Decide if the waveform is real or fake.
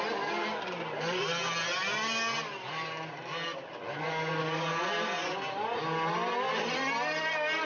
real